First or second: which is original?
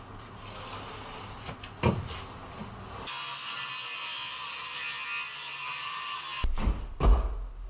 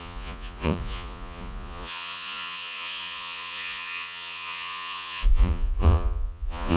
first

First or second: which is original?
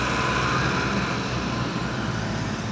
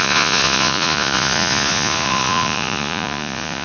first